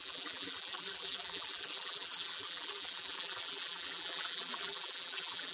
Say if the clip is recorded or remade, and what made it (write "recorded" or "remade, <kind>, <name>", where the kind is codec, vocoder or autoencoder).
remade, vocoder, BigVGAN v2